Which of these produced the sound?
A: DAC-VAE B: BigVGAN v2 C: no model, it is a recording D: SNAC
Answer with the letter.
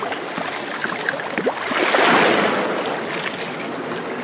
C